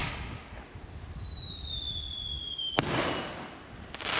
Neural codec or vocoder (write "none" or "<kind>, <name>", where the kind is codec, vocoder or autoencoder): none